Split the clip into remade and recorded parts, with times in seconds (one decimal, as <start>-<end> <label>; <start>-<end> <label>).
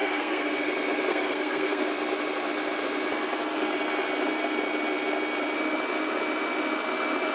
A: 0.0-0.7 remade; 0.7-1.1 recorded; 1.1-1.8 remade; 1.8-7.3 recorded